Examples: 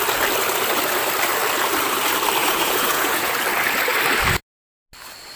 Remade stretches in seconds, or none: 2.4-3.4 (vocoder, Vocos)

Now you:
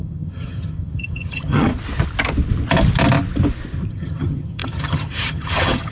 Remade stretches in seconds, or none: 0.0-1.7 (vocoder, HiFi-GAN); 3.9-5.9

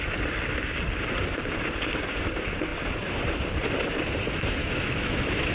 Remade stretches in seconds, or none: 4.6-5.5 (autoencoder, DAC-VAE)

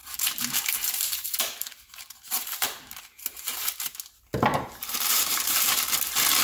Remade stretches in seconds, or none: 0.0-3.8 (vocoder, BigVGAN v2); 4.5-5.9